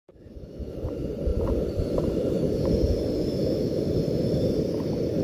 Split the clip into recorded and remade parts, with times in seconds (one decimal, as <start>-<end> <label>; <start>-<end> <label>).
0.0-3.3 recorded; 3.3-3.8 remade; 3.8-5.2 recorded